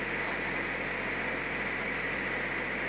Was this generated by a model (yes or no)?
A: no